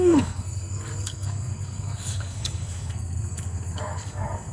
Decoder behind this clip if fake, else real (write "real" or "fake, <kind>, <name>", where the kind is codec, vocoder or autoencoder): fake, codec, SNAC